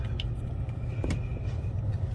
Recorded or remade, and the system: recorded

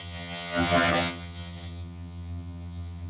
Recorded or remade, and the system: remade, vocoder, HiFi-GAN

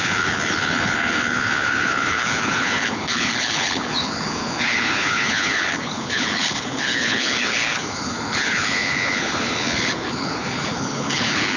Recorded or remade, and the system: remade, codec, HILCodec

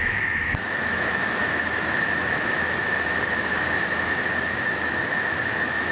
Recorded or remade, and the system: remade, autoencoder, DAC-VAE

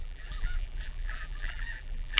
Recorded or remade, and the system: remade, vocoder, BigVGAN v2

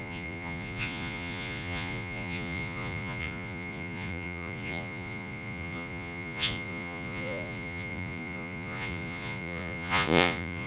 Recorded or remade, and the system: remade, vocoder, Vocos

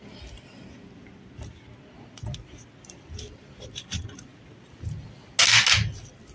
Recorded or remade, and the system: recorded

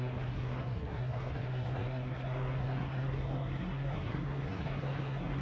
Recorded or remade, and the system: remade, codec, SNAC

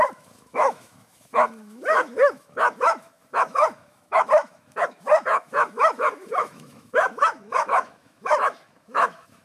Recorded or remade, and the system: remade, autoencoder, DAC-VAE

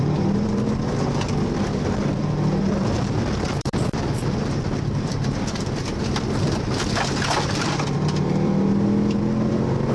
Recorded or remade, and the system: remade, vocoder, BigVGAN v2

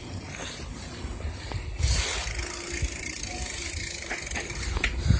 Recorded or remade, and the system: recorded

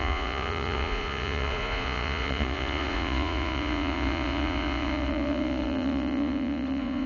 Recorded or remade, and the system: remade, vocoder, Vocos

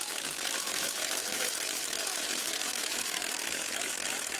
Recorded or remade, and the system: remade, autoencoder, DAC-VAE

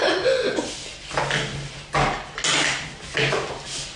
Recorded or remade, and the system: recorded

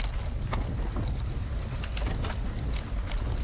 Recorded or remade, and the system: recorded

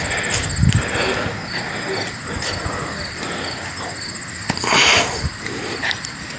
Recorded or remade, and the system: recorded